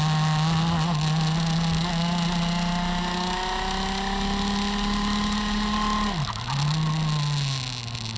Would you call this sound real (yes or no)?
yes